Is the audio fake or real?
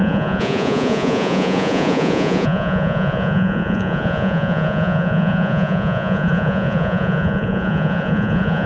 fake